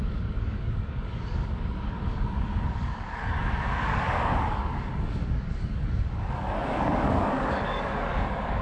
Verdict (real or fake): fake